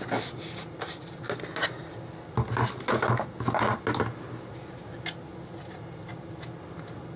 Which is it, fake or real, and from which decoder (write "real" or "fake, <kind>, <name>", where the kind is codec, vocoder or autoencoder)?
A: real